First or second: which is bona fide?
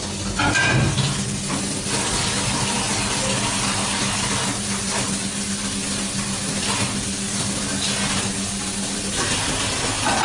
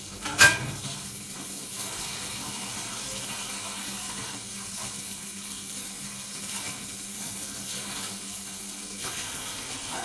first